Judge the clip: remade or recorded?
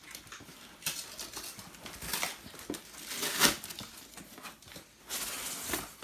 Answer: recorded